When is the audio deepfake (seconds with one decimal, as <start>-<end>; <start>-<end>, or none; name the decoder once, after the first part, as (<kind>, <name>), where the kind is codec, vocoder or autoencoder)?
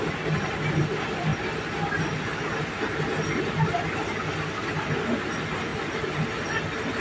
none